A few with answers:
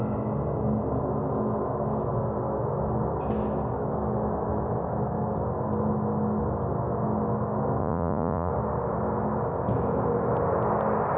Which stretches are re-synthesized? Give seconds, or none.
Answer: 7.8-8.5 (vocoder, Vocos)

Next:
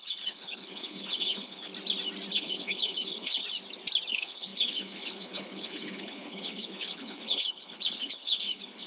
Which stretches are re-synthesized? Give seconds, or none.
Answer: 0.0-1.7 (codec, HILCodec); 2.3-3.4; 4.1-8.9

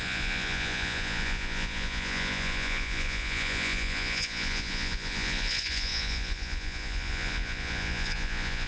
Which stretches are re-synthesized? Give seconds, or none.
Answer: 0.0-8.7 (vocoder, Vocos)

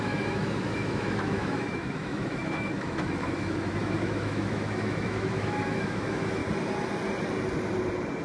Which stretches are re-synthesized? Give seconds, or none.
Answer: 0.0-6.4 (autoencoder, DAC-VAE)